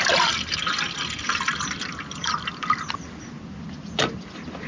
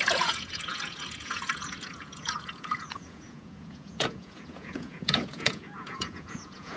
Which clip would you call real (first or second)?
first